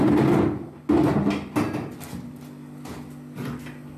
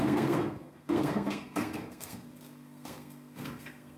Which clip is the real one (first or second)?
first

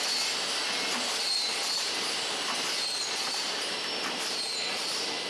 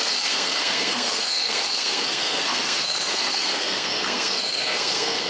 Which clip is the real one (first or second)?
first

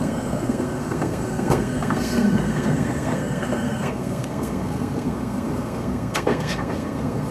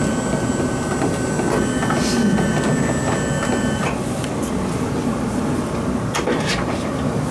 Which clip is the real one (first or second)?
second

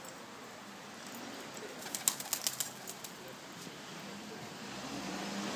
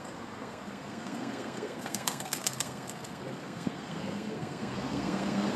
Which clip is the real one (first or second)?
first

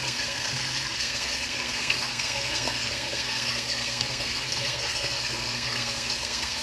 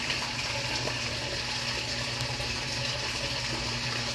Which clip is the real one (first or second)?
second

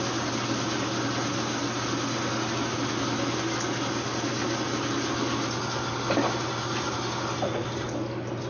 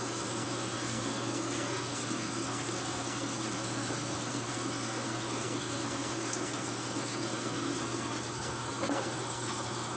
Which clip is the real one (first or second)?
first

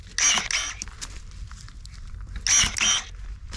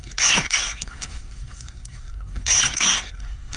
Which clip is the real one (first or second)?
first